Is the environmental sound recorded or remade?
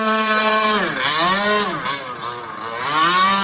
remade